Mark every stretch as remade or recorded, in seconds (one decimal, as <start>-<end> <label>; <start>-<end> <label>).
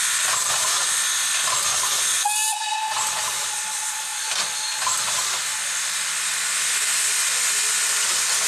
0.0-0.4 recorded; 0.4-1.0 remade; 1.0-4.1 recorded; 4.1-6.3 remade; 6.3-8.5 recorded